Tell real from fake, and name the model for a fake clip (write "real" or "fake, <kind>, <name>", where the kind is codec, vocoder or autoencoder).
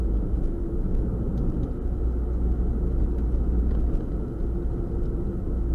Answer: real